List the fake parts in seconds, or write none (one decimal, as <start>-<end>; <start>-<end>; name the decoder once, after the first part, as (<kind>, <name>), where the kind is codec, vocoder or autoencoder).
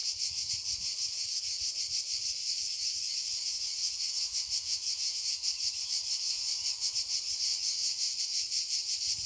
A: 0.0-0.5 (autoencoder, DAC-VAE); 2.4-6.9; 7.5-8.2